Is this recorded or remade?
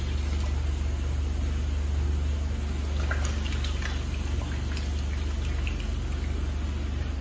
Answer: recorded